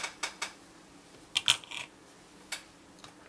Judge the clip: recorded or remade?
recorded